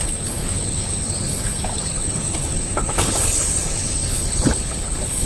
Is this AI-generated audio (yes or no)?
yes